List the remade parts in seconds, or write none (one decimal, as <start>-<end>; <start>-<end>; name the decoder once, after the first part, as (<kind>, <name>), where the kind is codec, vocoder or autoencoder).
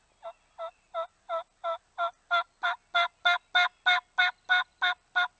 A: none